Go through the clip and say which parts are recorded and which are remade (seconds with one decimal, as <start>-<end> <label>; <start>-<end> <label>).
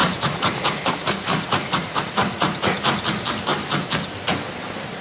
0.0-3.0 remade; 3.0-5.0 recorded